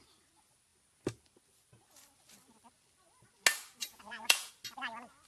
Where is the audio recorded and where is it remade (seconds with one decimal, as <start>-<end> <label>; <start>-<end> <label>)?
0.0-3.8 recorded; 3.8-4.5 remade; 4.5-5.3 recorded